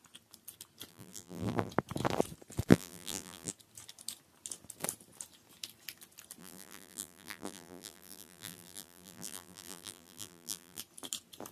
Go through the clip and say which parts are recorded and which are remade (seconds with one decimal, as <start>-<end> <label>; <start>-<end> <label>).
0.0-0.9 recorded; 0.9-1.7 remade; 1.7-2.7 recorded; 2.7-3.5 remade; 3.5-6.4 recorded; 6.4-10.8 remade; 10.8-11.5 recorded